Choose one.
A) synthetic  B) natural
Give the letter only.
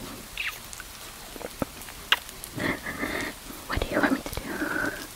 B